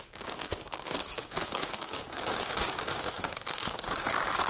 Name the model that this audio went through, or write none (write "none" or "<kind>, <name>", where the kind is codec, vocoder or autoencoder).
codec, DAC